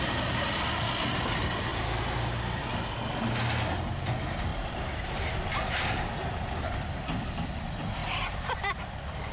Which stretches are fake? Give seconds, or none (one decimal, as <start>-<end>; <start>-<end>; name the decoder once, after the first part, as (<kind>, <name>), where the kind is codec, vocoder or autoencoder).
4.5-5.4 (vocoder, BigVGAN v2); 8.0-8.8

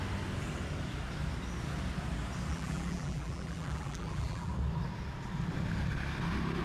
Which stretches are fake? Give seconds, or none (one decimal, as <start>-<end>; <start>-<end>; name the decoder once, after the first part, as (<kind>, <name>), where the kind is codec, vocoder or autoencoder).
2.5-4.5 (vocoder, BigVGAN v2)

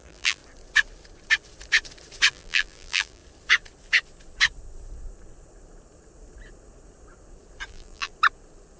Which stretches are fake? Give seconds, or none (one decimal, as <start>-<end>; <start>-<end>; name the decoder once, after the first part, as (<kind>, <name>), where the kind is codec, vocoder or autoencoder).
0.0-0.4 (vocoder, BigVGAN v2); 2.3-3.2; 7.7-8.1

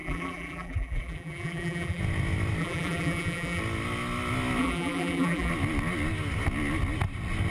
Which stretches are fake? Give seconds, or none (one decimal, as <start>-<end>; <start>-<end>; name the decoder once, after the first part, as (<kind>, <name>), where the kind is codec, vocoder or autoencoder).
0.0-2.0 (vocoder, BigVGAN v2); 2.6-3.6; 4.6-5.5

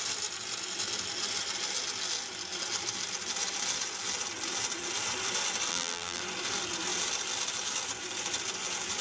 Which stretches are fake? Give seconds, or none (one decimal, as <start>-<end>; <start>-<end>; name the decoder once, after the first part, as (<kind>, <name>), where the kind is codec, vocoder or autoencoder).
5.7-6.2 (vocoder, BigVGAN v2)

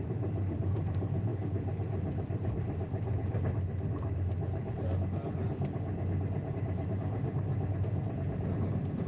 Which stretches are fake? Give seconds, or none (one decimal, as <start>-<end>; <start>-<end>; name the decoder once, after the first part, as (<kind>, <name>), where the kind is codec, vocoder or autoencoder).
0.0-1.3 (vocoder, BigVGAN v2); 6.5-7.5

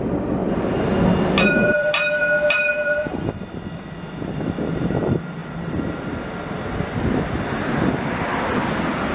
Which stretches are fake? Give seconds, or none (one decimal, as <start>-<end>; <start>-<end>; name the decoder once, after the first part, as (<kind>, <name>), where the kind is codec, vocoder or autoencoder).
0.4-3.2 (vocoder, BigVGAN v2); 5.4-7.4

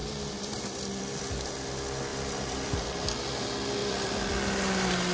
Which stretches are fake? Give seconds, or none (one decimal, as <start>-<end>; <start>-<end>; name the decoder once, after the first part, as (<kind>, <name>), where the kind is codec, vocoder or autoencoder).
0.0-1.2 (vocoder, BigVGAN v2); 2.1-2.8; 3.8-4.3